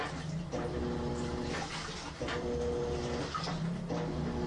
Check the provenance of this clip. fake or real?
real